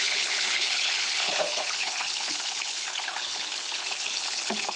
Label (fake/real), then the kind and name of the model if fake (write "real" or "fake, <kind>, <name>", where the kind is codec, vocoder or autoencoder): fake, codec, HILCodec